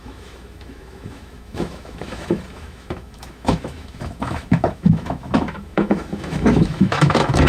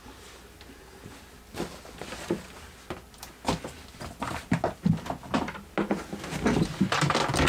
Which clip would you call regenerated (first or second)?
first